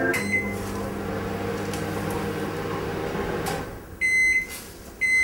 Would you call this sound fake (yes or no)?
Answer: no